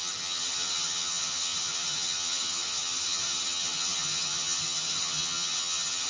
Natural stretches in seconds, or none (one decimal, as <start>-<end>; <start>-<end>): none